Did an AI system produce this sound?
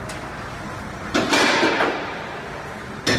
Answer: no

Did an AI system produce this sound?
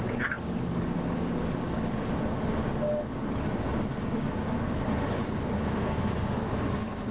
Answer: yes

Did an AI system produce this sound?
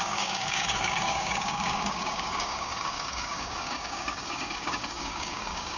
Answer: yes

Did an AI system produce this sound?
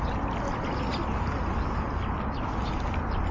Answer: no